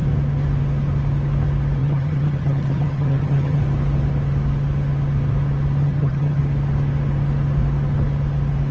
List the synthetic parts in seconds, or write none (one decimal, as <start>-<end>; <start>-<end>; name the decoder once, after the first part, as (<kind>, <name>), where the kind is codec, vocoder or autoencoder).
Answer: 1.8-3.6 (vocoder, HiFi-GAN); 5.8-6.4